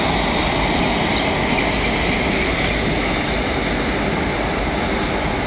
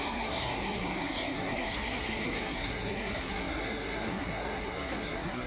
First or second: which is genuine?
first